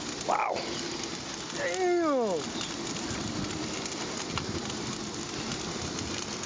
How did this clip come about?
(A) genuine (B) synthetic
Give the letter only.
A